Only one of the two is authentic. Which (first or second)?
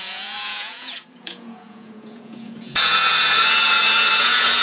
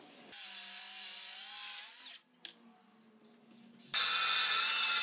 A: second